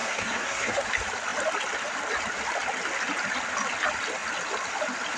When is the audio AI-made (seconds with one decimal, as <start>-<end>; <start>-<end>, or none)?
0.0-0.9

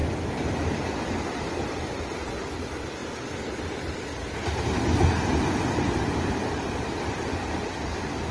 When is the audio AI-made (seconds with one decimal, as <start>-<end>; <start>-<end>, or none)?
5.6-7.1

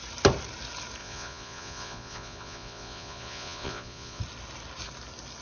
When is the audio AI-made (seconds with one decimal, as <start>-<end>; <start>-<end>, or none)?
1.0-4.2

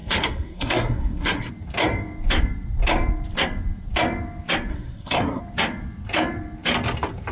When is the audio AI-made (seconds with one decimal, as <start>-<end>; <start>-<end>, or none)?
0.0-1.5; 4.7-5.4

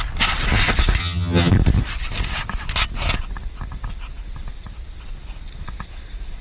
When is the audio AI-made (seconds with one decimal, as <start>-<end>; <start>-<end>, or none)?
1.0-1.5